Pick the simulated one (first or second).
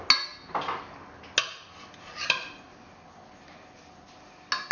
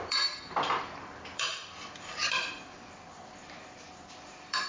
second